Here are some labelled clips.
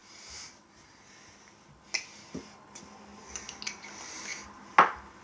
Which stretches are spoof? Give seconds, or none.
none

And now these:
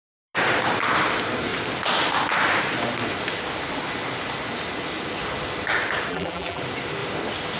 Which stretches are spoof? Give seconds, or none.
6.1-6.6 (vocoder, BigVGAN v2)

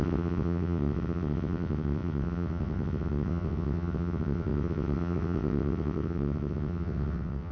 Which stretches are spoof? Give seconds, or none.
0.0-7.5 (vocoder, WaveNeXt)

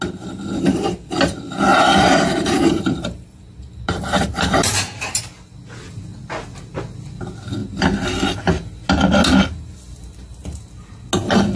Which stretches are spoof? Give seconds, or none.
1.7-5.2 (vocoder, BigVGAN v2)

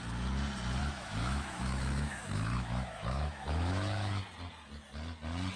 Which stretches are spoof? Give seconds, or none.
0.8-4.2 (autoencoder, DAC-VAE)

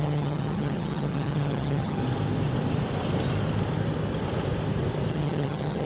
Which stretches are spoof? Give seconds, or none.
0.0-2.0 (vocoder, HiFi-GAN); 5.1-5.9

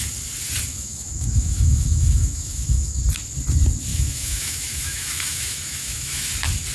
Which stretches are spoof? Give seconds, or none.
0.7-3.0 (autoencoder, DAC-VAE); 3.9-6.3

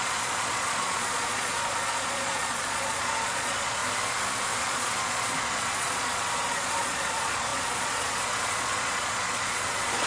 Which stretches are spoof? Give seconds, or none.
0.0-3.8 (vocoder, Vocos); 4.6-10.1